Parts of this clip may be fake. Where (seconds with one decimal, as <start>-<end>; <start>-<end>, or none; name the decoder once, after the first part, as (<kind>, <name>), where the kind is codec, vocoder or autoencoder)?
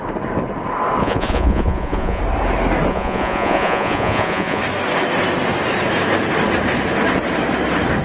1.0-2.2 (vocoder, Vocos); 2.9-4.6